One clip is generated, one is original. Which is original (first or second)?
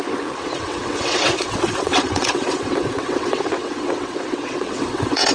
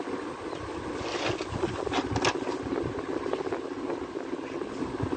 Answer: second